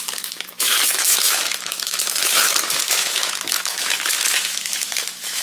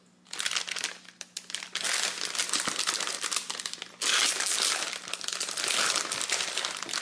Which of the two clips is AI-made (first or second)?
first